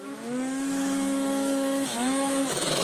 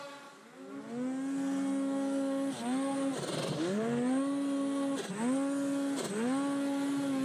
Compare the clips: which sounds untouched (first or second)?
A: second